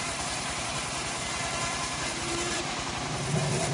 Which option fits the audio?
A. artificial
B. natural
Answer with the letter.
A